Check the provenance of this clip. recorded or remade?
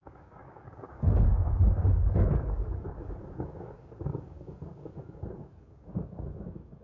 remade